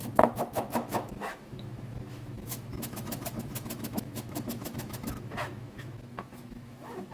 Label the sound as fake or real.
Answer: fake